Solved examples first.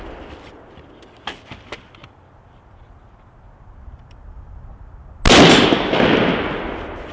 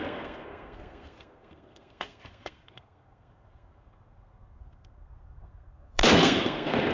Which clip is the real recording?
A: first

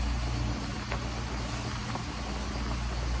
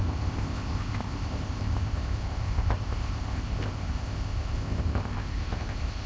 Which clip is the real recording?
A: first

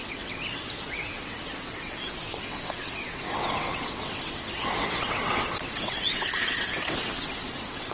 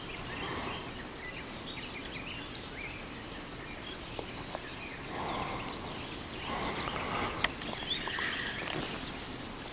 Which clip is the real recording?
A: second